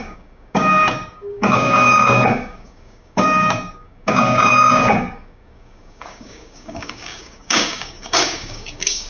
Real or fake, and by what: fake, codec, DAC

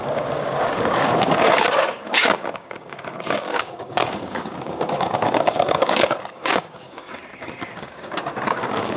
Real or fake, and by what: fake, codec, DAC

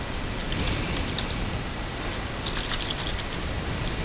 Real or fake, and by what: real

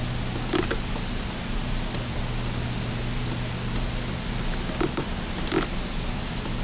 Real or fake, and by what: real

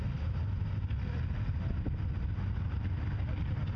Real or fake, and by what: real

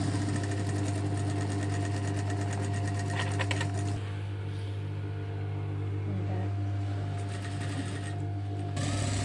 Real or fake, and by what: real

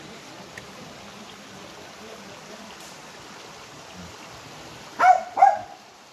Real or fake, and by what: real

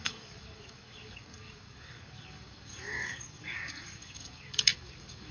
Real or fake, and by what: fake, codec, DAC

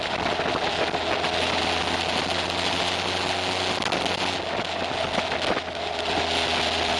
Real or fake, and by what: real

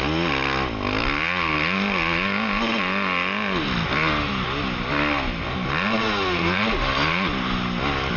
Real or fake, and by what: real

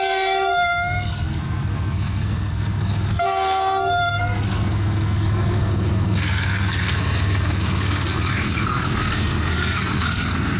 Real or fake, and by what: fake, codec, SNAC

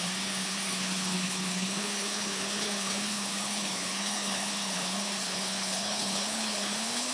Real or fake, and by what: fake, codec, HILCodec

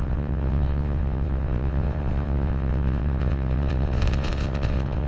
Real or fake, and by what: fake, vocoder, WaveNeXt